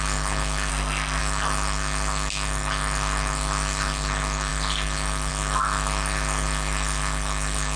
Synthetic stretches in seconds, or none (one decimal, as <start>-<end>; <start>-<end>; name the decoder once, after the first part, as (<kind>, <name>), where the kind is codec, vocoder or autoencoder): 0.7-1.2 (codec, SNAC)